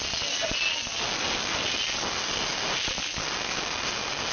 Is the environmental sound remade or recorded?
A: recorded